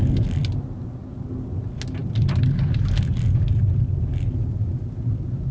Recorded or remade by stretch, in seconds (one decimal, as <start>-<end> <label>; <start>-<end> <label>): 0.0-5.5 recorded